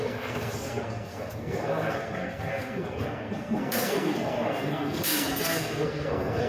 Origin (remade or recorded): remade